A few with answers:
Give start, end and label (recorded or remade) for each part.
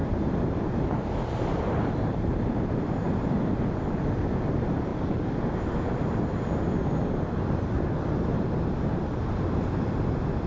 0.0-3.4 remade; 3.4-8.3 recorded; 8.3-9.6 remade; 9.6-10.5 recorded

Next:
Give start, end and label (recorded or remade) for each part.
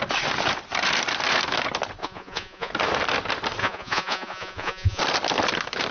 0.0-2.0 recorded; 2.0-2.7 remade; 2.7-3.6 recorded; 3.6-5.0 remade; 5.0-5.9 recorded